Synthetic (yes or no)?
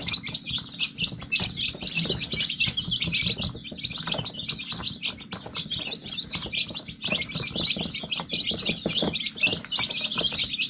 no